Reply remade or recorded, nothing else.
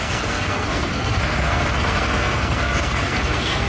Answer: remade